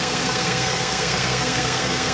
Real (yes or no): no